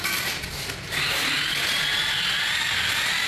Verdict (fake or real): real